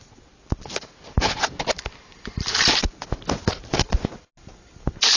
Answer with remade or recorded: recorded